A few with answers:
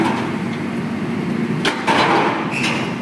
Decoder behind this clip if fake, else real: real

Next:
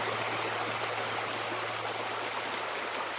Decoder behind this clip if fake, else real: real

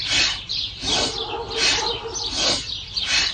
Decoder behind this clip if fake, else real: real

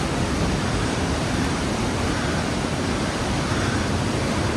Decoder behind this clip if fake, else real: fake, vocoder, BigVGAN v2